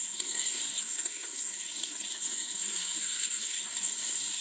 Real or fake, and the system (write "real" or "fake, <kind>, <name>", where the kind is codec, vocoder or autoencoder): fake, codec, SNAC